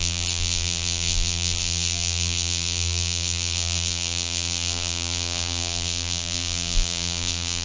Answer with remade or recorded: remade